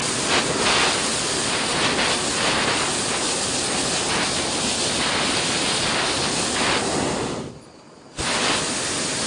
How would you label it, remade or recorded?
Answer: recorded